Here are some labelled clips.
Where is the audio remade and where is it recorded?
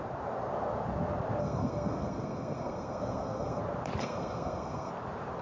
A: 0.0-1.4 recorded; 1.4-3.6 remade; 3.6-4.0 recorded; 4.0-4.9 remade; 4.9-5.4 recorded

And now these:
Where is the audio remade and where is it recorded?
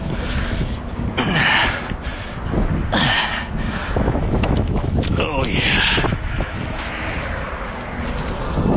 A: 0.0-3.8 recorded; 3.8-6.9 remade; 6.9-8.8 recorded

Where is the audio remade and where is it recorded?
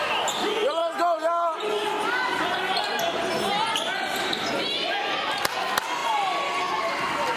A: 0.0-7.4 recorded